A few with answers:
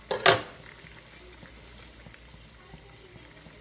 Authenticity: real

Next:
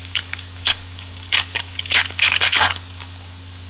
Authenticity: fake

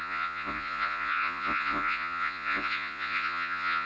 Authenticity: fake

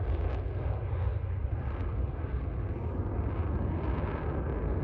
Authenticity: real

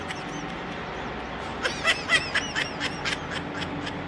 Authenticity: real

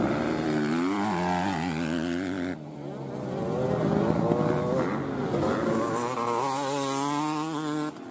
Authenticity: real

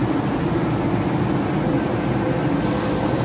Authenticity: real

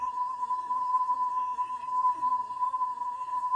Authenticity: fake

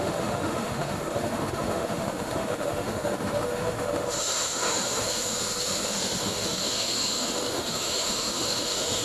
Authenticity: fake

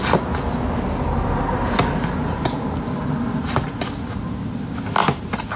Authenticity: real